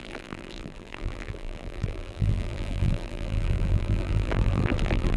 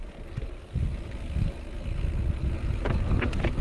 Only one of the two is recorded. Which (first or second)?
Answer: second